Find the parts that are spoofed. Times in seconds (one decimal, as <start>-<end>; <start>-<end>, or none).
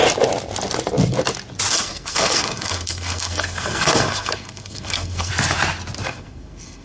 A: 1.7-5.3; 6.1-6.8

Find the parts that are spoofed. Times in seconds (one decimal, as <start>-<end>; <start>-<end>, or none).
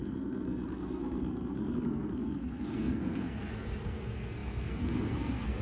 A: 0.0-5.6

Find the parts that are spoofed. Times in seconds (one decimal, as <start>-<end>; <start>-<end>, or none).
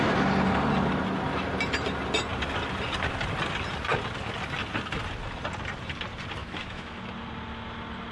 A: 6.4-7.0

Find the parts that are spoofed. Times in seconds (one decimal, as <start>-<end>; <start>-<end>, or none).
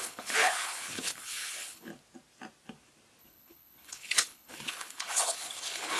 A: 0.0-1.9; 3.2-6.0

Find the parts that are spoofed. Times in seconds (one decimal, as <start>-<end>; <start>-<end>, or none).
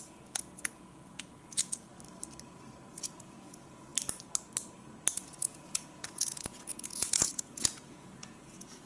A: 0.0-1.9; 2.9-3.9; 5.1-8.9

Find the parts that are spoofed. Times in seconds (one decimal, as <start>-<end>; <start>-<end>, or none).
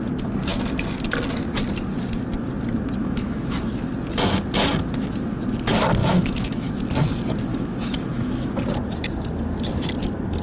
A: 3.0-3.7; 6.0-6.7; 7.5-8.5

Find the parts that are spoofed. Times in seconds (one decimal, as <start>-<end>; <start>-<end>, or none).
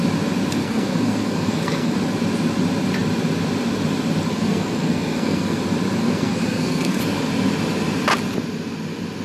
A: 0.6-1.9; 4.3-5.6; 6.0-7.0